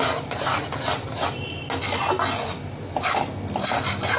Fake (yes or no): no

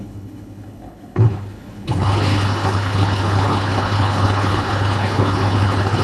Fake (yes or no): yes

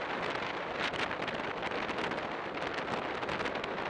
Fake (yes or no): no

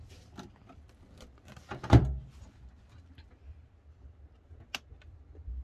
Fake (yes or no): no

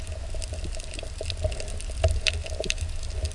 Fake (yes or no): no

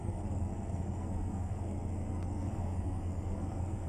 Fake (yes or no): yes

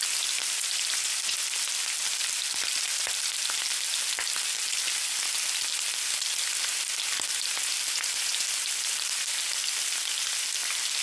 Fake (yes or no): no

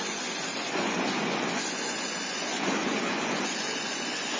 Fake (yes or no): yes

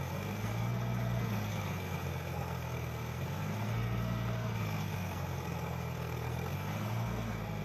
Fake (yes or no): yes